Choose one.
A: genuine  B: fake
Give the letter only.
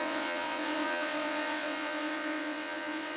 B